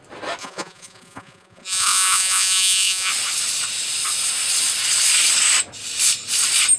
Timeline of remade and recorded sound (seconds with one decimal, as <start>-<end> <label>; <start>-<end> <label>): 0.0-0.4 recorded; 0.4-3.1 remade; 3.1-6.8 recorded